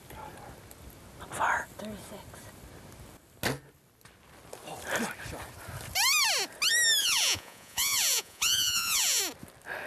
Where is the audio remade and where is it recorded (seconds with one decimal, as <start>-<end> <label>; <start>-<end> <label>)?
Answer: 0.0-7.0 recorded; 7.0-9.2 remade; 9.2-9.9 recorded

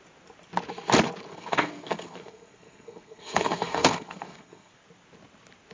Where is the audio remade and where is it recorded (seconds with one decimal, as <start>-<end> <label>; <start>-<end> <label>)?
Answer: 0.0-1.3 recorded; 1.3-4.7 remade; 4.7-5.7 recorded

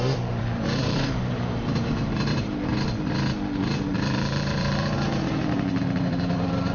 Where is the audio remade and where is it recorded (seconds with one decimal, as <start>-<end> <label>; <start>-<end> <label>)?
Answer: 0.0-2.7 remade; 2.7-3.9 recorded; 3.9-6.7 remade

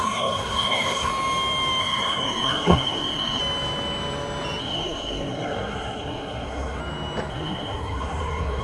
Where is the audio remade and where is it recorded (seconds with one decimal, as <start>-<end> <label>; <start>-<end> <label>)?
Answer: 0.0-1.1 remade; 1.1-1.8 recorded; 1.8-3.4 remade; 3.4-4.6 recorded; 4.6-6.8 remade; 6.8-7.3 recorded; 7.3-8.6 remade

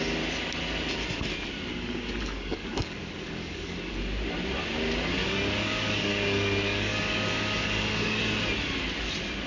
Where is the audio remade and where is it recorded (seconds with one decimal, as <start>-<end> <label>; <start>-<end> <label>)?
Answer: 0.0-1.7 recorded; 1.7-3.9 remade; 3.9-5.2 recorded; 5.2-8.2 remade; 8.2-9.5 recorded